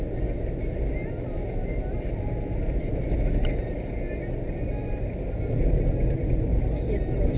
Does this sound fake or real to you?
real